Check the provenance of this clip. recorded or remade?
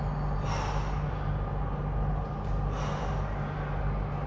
recorded